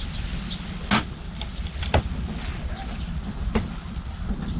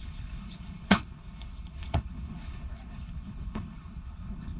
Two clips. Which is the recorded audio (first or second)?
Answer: first